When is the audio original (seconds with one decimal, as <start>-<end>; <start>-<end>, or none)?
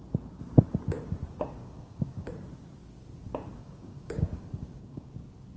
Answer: 0.0-1.6; 2.3-3.6; 5.1-5.6